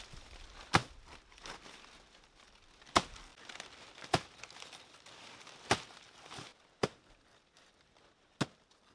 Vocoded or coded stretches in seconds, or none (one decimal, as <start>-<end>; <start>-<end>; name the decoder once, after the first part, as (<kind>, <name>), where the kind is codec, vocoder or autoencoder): none